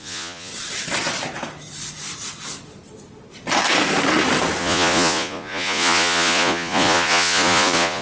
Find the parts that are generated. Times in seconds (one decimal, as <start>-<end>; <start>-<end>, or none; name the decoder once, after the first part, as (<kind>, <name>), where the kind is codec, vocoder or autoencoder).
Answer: 0.0-0.5 (vocoder, Vocos); 4.6-8.0